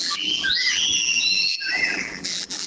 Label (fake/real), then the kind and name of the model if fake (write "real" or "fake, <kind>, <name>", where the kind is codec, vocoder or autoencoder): fake, vocoder, BigVGAN v2